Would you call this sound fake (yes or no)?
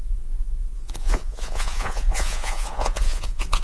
yes